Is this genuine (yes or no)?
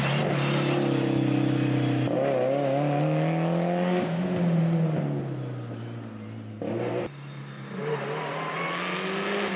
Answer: yes